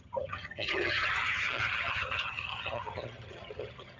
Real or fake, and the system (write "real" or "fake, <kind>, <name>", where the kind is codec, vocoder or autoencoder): fake, vocoder, HiFi-GAN